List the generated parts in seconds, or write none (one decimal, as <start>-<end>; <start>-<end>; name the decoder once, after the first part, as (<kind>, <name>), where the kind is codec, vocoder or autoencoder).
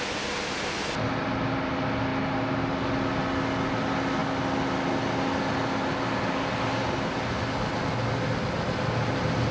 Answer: none